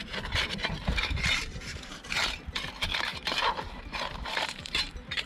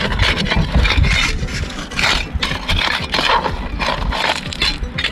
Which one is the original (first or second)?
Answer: second